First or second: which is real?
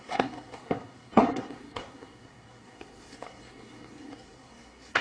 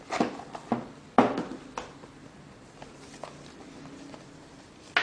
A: second